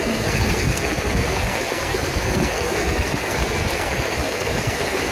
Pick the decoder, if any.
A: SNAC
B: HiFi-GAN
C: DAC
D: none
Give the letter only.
A